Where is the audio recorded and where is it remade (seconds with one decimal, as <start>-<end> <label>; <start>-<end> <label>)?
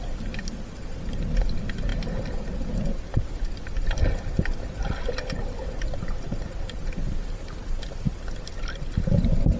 0.0-9.6 recorded